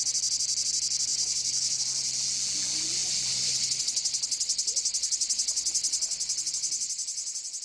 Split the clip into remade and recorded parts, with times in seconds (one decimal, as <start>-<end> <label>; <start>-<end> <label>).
0.0-1.1 recorded; 1.1-1.8 remade; 1.8-7.6 recorded